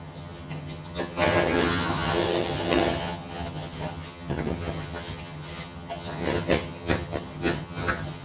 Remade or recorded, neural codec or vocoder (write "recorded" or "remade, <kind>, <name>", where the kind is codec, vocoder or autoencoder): remade, vocoder, HiFi-GAN